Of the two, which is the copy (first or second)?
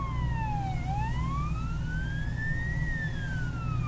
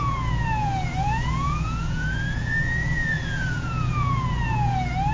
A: second